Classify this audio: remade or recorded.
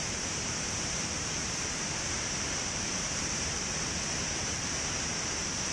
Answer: remade